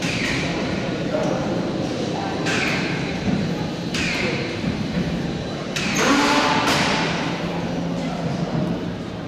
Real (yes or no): no